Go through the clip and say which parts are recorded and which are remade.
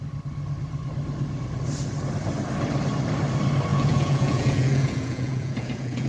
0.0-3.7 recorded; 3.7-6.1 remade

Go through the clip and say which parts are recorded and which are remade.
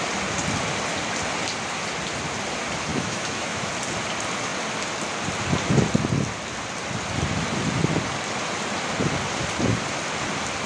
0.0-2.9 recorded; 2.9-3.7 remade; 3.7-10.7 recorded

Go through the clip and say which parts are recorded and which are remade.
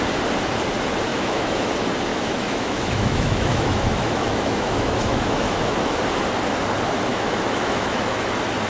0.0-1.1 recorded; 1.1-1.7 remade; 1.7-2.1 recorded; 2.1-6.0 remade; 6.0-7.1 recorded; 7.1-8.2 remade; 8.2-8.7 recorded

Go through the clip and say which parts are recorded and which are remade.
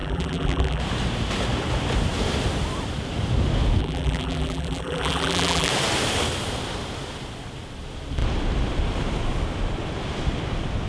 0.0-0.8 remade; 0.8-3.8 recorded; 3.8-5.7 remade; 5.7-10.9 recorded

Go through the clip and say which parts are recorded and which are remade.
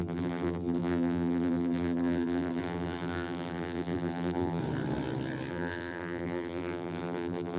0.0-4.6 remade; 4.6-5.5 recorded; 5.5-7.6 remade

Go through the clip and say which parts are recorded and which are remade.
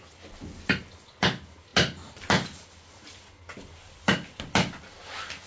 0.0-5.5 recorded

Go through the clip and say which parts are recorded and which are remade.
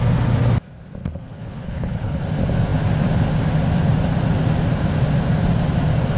0.0-1.0 recorded; 1.0-2.2 remade; 2.2-6.2 recorded